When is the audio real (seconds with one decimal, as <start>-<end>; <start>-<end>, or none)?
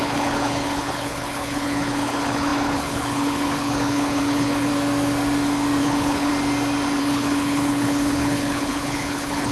4.7-5.8; 6.3-7.0